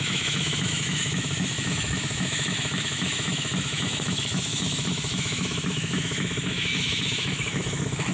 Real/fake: fake